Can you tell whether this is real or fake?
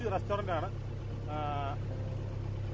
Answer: real